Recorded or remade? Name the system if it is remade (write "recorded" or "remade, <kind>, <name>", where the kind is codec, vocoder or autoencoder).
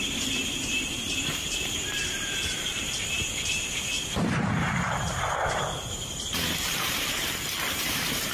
remade, vocoder, BigVGAN v2